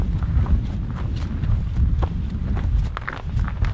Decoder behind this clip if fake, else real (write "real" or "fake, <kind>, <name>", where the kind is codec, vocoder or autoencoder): real